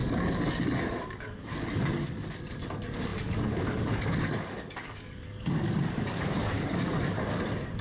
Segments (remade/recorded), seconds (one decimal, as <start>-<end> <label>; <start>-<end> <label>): 0.0-7.8 remade